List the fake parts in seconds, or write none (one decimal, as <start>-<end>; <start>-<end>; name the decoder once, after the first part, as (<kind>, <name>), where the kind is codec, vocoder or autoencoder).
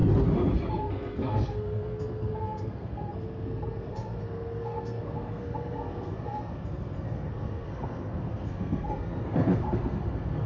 0.7-10.5 (codec, SNAC)